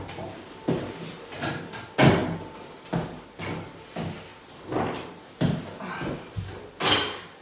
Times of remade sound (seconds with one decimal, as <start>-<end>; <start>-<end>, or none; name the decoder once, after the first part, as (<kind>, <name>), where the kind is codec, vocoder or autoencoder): none